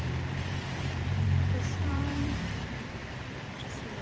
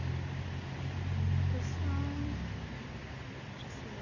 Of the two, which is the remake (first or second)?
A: first